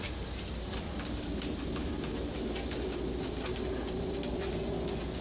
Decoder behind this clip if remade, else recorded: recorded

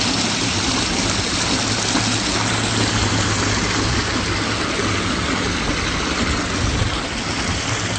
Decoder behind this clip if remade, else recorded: recorded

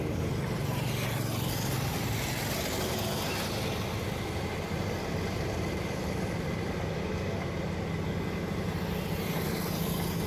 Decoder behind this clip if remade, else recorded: recorded